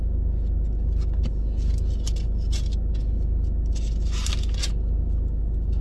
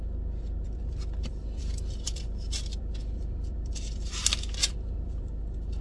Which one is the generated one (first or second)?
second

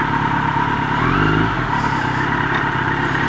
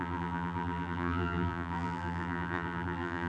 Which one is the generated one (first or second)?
second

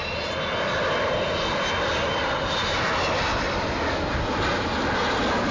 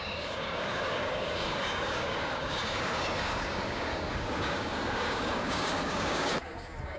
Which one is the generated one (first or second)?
second